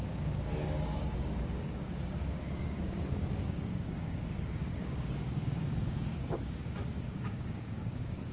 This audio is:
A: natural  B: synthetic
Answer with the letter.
B